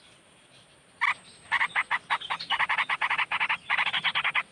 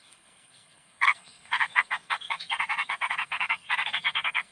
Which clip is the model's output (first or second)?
second